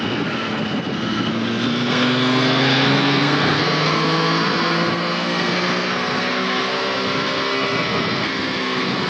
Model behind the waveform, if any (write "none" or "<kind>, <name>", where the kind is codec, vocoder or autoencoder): codec, SNAC